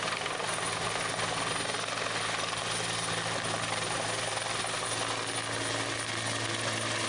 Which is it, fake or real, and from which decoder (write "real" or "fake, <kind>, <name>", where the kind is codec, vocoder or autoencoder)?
real